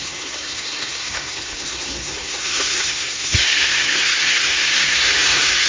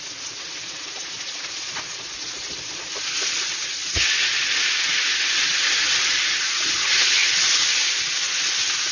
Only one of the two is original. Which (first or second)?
second